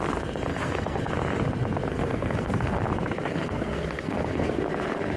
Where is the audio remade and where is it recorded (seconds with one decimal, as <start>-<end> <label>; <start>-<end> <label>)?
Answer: 0.0-0.5 recorded; 0.5-1.0 remade; 1.0-1.9 recorded; 1.9-2.8 remade; 2.8-3.3 recorded; 3.3-4.6 remade; 4.6-5.2 recorded